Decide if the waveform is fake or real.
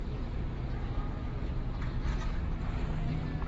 real